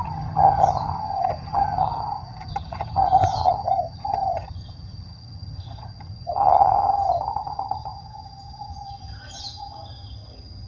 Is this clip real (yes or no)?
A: no